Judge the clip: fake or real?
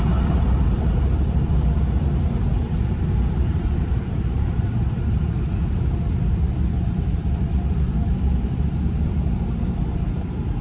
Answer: fake